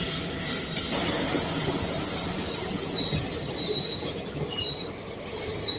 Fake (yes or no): no